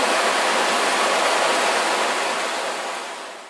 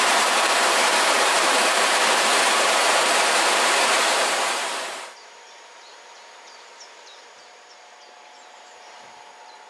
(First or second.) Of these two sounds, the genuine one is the first